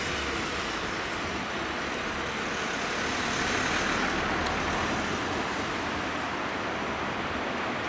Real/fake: real